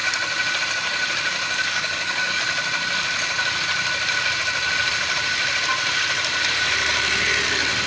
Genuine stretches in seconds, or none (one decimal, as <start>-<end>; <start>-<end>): 0.0-1.6; 2.4-7.9

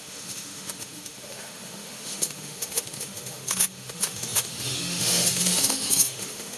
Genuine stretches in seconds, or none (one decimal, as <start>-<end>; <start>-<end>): none